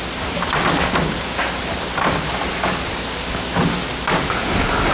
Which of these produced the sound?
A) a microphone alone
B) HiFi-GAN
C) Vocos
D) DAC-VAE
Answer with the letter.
A